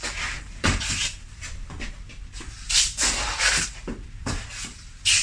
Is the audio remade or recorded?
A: recorded